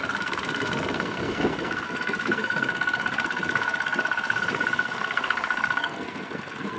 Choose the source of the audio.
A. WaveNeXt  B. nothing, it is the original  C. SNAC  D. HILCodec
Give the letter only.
C